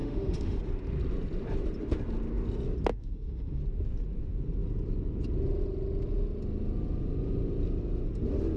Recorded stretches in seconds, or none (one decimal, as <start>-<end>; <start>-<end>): 0.6-2.9; 3.6-8.6